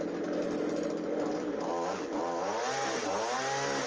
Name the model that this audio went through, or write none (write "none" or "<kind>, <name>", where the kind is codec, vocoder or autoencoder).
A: none